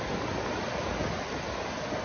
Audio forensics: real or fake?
real